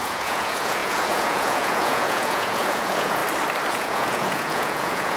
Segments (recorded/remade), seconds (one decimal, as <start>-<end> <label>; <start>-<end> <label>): 0.0-3.2 remade; 3.2-3.7 recorded; 3.7-5.2 remade